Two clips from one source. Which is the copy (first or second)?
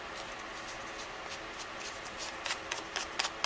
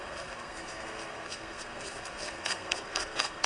second